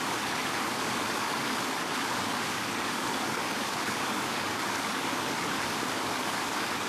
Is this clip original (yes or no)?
no